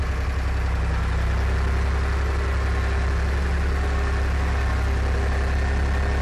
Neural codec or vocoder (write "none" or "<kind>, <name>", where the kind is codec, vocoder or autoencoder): none